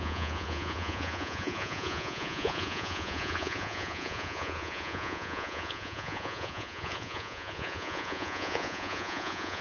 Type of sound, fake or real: fake